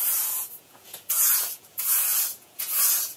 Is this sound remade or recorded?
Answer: remade